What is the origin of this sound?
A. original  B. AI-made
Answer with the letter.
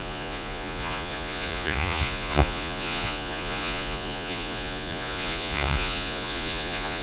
B